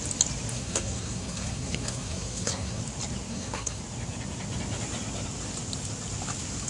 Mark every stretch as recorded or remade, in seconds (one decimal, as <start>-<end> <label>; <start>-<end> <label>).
0.0-0.5 recorded; 0.5-2.8 remade; 2.8-3.3 recorded; 3.3-3.8 remade; 3.8-6.7 recorded